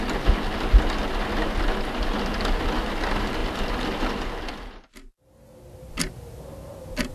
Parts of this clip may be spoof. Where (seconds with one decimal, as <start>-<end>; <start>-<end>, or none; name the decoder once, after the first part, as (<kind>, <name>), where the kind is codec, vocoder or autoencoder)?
none